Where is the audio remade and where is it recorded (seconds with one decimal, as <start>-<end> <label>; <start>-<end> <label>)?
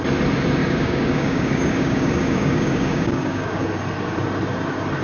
0.0-0.6 recorded; 0.6-3.6 remade; 3.6-5.0 recorded